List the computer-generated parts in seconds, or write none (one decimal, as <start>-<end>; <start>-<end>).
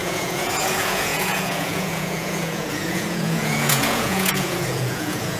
0.0-5.4